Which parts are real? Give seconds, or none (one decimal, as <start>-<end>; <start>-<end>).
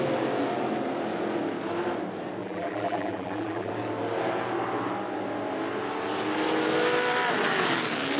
0.0-2.4; 3.7-8.2